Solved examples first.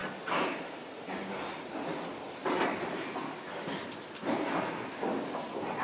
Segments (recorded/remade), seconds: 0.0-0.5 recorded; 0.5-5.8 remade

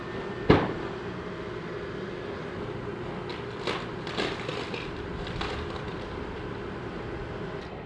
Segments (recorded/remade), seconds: 0.0-4.5 recorded; 4.5-7.0 remade; 7.0-7.9 recorded

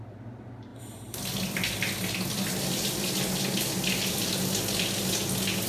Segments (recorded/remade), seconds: 0.0-5.7 recorded

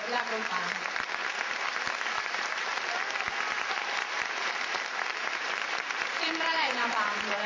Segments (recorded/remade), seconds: 0.0-2.7 remade; 2.7-4.1 recorded; 4.1-7.5 remade

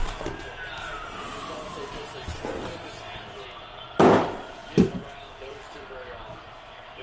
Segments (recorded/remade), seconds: 0.0-4.6 recorded; 4.6-5.8 remade; 5.8-7.0 recorded

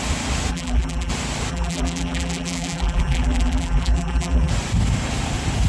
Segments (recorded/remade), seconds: 0.0-0.5 recorded; 0.5-1.1 remade; 1.1-1.5 recorded; 1.5-4.5 remade; 4.5-5.7 recorded

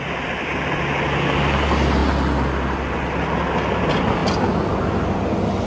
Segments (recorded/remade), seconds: 0.0-5.7 recorded

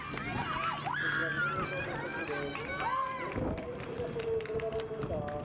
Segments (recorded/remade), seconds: 0.0-3.0 recorded; 3.0-3.8 remade; 3.8-5.4 recorded